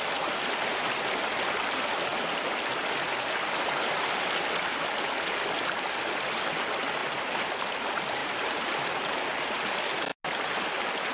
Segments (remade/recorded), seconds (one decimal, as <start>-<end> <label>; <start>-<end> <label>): 0.0-8.2 recorded; 8.2-9.4 remade; 9.4-11.1 recorded